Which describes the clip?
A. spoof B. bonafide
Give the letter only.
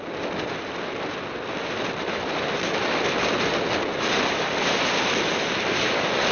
B